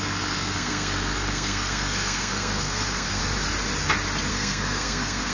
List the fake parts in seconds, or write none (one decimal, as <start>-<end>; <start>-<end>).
0.0-3.2; 4.3-5.3